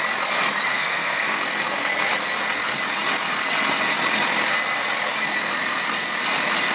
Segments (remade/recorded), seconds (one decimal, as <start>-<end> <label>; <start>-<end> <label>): 0.0-0.7 recorded; 0.7-1.4 remade; 1.4-6.7 recorded